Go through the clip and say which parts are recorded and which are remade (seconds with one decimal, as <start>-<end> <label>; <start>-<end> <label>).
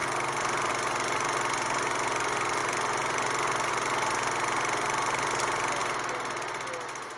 0.0-7.2 recorded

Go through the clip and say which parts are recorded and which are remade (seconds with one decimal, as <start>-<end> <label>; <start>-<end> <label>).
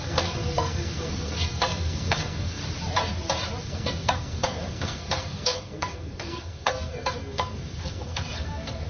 0.0-2.6 remade; 2.6-3.6 recorded; 3.6-8.9 remade